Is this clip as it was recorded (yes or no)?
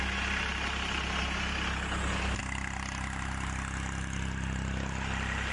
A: yes